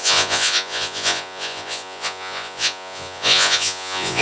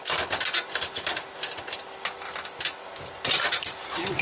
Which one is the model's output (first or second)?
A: first